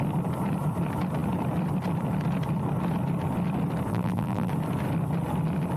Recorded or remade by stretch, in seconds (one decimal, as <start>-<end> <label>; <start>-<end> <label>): 0.0-3.9 recorded; 3.9-4.5 remade; 4.5-5.8 recorded